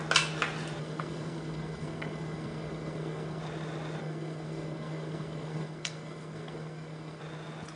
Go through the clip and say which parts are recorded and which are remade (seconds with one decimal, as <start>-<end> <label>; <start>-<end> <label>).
0.0-0.8 recorded; 0.8-3.4 remade; 3.4-4.0 recorded; 4.0-7.2 remade; 7.2-7.8 recorded